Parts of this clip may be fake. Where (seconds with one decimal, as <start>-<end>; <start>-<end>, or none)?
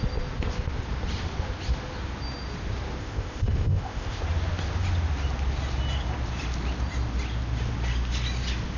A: 3.0-4.2